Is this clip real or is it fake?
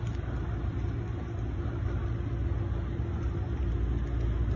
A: real